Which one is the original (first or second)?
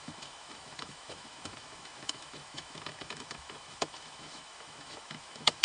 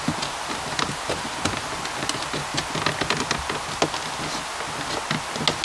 second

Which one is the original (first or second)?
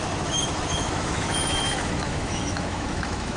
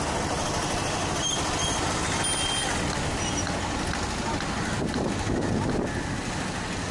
second